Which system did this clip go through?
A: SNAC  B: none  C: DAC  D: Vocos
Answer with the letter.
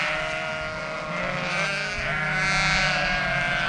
B